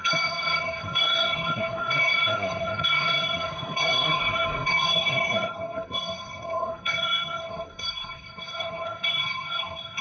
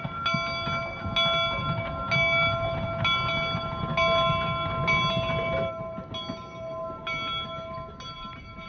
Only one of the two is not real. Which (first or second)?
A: first